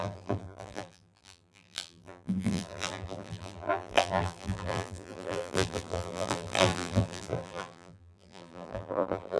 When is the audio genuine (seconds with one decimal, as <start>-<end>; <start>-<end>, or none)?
none